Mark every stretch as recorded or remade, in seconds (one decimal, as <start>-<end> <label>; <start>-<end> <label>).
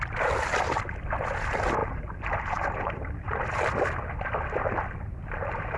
0.0-1.8 recorded; 1.8-3.4 remade; 3.4-5.8 recorded